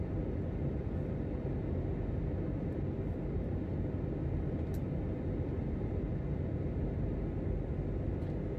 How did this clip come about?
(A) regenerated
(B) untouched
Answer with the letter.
B